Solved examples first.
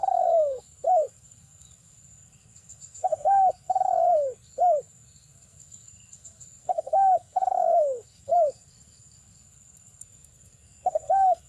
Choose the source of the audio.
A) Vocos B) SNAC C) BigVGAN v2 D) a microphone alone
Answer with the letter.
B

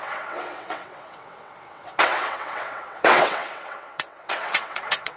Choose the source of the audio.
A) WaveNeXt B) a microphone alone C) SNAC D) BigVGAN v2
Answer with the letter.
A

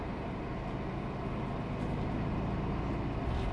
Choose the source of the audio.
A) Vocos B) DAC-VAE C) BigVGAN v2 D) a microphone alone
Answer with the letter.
D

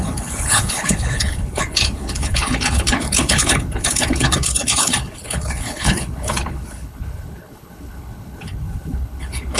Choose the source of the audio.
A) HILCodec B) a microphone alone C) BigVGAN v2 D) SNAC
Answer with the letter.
A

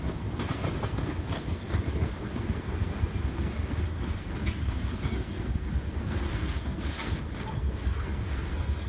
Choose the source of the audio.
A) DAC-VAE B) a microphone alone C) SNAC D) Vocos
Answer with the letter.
C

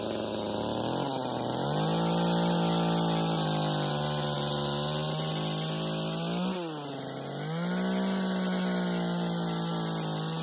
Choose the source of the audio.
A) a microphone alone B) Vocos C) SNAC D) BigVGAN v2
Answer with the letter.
A